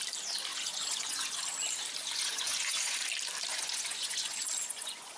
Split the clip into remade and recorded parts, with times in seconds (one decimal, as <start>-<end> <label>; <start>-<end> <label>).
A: 0.0-0.5 recorded; 0.5-1.4 remade; 1.4-2.0 recorded; 2.0-3.0 remade; 3.0-3.5 recorded; 3.5-5.2 remade